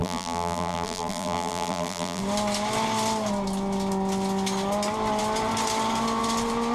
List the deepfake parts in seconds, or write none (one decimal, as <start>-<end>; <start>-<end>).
0.0-2.2